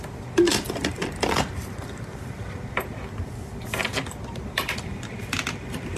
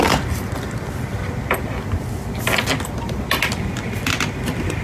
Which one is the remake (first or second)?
first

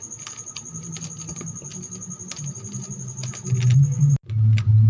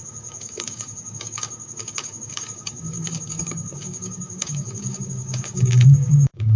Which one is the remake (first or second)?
second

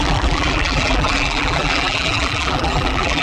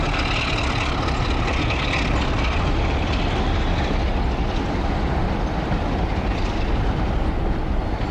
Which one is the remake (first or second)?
first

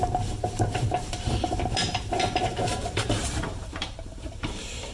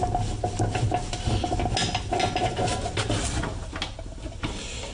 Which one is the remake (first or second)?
first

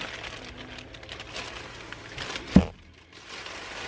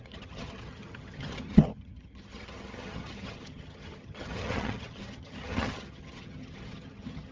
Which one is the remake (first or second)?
second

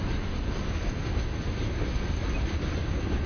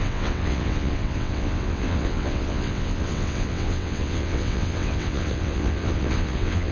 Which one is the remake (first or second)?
second